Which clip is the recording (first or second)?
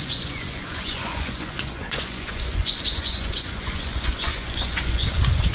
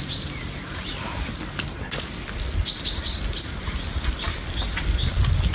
second